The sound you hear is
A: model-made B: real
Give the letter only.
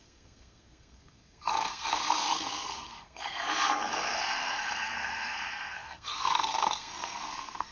A